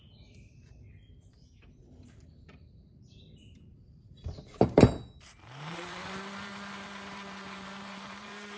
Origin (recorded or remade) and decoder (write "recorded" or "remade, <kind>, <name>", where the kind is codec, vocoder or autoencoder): remade, vocoder, BigVGAN v2